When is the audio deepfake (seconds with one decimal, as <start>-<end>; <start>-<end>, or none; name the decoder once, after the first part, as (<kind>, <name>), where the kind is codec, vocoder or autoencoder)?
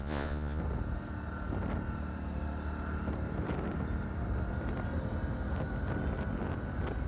0.0-0.6 (vocoder, Vocos)